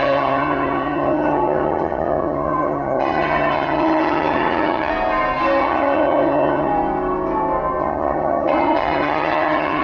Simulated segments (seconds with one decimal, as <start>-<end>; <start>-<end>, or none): 0.0-4.9; 5.6-6.7; 7.8-9.8